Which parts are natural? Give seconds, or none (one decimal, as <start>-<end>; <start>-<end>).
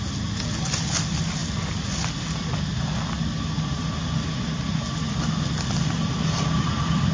0.0-7.1